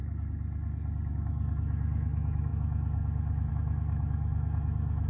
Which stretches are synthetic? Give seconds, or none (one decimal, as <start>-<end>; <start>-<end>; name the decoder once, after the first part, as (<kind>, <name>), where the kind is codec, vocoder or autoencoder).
1.1-5.1 (autoencoder, DAC-VAE)